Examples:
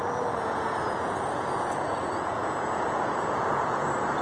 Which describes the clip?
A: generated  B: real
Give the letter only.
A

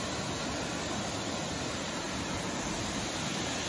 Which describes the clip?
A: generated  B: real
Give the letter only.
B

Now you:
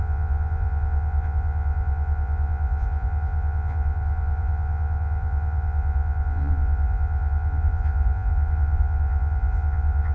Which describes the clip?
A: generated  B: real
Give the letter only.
A